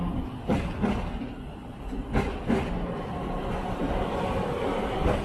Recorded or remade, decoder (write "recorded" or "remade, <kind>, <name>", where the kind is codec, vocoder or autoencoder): recorded